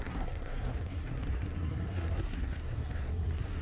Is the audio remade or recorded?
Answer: remade